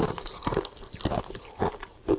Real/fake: real